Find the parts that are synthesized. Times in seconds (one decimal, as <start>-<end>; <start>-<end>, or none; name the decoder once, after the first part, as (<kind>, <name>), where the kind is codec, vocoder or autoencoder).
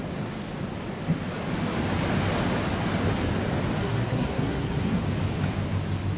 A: 3.8-5.0 (codec, SNAC)